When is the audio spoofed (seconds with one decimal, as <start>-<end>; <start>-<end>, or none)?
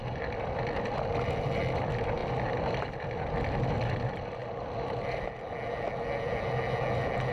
0.0-1.1; 2.2-3.3